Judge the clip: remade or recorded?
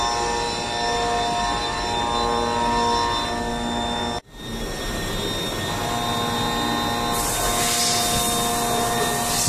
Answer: recorded